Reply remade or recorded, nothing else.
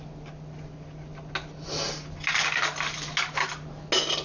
recorded